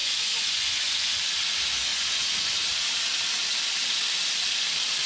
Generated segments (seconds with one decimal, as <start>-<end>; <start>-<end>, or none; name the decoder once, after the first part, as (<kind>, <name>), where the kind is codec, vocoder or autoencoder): 0.0-1.1 (vocoder, Vocos); 1.9-2.5